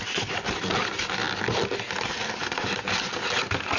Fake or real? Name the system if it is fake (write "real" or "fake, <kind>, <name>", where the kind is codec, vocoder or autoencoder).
real